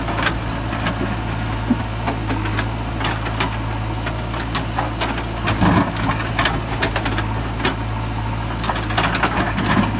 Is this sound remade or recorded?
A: recorded